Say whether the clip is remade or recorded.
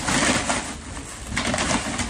recorded